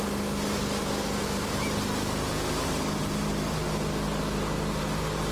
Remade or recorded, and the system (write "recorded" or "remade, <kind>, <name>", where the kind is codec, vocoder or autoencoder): recorded